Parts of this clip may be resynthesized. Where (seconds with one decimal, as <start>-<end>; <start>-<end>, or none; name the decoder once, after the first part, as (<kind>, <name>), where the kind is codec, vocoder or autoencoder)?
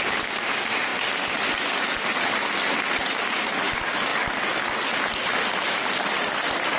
none